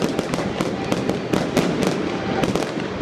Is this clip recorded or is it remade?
recorded